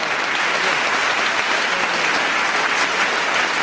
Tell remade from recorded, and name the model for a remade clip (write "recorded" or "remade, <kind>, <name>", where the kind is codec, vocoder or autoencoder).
recorded